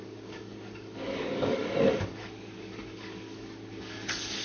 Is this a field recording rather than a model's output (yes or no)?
no